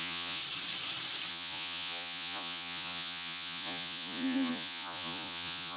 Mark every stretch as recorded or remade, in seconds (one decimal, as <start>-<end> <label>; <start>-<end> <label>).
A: 0.0-0.4 remade; 0.4-1.3 recorded; 1.3-5.8 remade

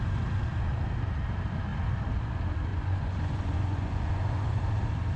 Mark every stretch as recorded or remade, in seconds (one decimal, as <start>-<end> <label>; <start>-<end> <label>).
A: 0.0-2.7 recorded; 2.7-4.6 remade; 4.6-5.2 recorded

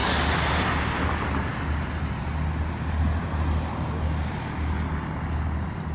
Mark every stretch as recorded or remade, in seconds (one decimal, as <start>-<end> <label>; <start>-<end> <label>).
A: 0.0-5.9 recorded

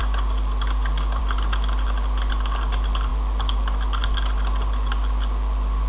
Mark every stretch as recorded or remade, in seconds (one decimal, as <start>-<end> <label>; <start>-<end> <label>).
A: 0.0-5.9 recorded